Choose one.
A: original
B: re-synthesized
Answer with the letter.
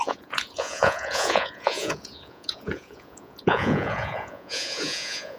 B